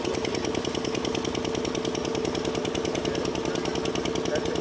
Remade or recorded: recorded